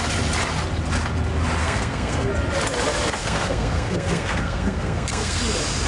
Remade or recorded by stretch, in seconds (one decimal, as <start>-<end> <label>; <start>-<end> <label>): 0.0-1.6 recorded; 1.6-2.3 remade; 2.3-3.2 recorded; 3.2-5.4 remade; 5.4-5.9 recorded